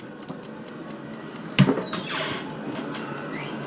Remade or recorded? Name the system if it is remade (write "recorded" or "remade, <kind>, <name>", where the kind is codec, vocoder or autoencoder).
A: recorded